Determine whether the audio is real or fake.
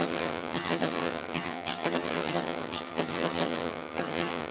fake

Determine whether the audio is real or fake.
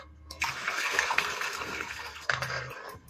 fake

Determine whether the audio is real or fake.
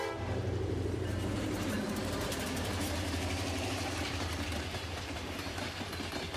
fake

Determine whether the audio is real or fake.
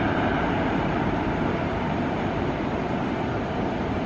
fake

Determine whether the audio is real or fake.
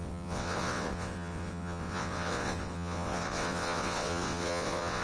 fake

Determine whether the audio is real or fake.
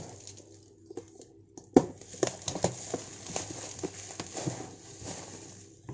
real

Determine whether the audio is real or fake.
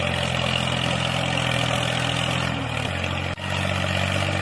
real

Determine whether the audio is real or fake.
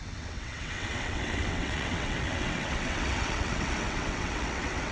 fake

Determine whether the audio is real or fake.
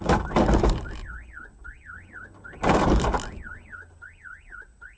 real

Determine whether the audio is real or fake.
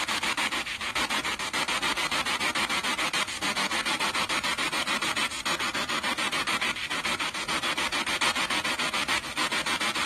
real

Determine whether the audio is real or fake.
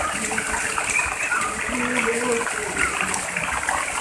real